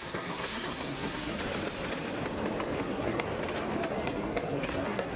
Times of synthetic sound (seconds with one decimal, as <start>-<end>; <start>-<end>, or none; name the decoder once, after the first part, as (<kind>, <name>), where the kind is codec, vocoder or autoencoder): 0.0-1.4 (codec, SNAC); 2.8-3.3; 3.9-5.2

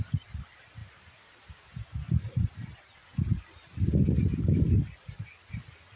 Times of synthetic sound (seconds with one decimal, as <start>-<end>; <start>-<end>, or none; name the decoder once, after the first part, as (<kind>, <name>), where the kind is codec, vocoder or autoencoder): none

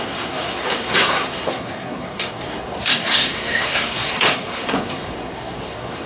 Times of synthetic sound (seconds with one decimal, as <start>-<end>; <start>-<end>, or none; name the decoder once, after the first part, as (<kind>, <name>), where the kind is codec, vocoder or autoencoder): 0.0-6.1 (codec, SNAC)

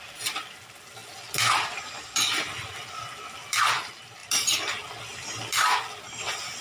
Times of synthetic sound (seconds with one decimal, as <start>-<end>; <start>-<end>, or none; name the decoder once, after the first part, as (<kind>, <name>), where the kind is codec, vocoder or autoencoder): none

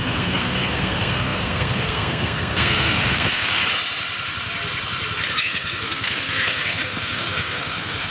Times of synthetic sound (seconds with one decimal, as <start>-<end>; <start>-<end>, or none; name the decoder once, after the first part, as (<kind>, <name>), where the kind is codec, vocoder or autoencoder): 0.0-3.6 (codec, SNAC); 5.4-8.1

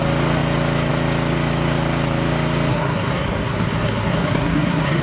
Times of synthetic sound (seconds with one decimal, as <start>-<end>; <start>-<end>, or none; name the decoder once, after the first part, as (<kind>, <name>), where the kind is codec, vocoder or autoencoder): 2.7-5.0 (codec, SNAC)

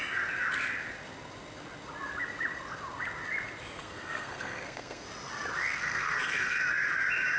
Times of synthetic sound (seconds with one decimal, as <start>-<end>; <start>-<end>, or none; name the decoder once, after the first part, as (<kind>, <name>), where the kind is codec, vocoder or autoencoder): 3.8-5.0 (codec, SNAC); 5.6-6.6